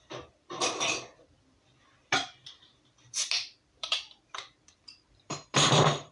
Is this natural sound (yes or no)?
no